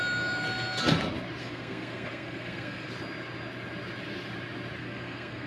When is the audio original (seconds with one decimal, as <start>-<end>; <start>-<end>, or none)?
0.0-1.4; 2.9-4.8